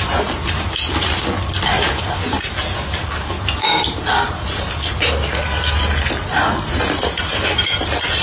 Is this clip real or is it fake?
real